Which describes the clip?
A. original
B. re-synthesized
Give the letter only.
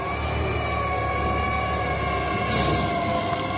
A